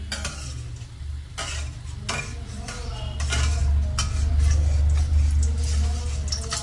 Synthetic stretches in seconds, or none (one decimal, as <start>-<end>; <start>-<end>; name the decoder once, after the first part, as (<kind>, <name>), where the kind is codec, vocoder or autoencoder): none